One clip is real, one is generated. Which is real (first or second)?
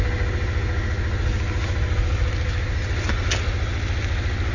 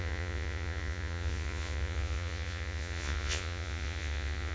first